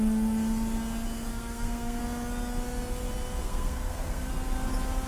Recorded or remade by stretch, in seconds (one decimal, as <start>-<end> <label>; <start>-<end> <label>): 0.0-1.3 recorded; 1.3-2.0 remade; 2.0-3.4 recorded; 3.4-4.3 remade; 4.3-5.1 recorded